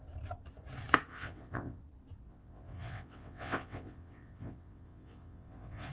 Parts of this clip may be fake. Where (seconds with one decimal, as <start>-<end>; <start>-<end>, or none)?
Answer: 1.1-1.8; 2.3-5.9

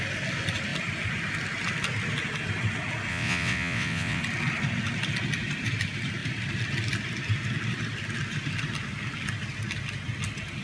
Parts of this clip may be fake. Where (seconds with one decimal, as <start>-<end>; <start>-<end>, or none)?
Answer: 3.1-4.2

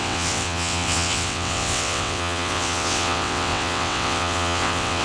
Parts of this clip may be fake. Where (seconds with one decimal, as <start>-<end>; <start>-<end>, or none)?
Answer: 0.0-5.0